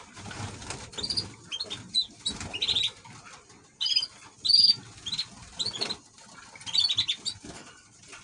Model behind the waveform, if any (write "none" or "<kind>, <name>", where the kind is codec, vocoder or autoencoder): none